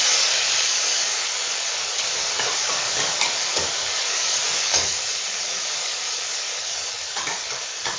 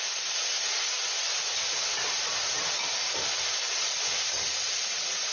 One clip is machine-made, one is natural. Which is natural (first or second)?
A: second